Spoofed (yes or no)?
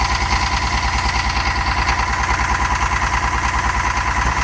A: no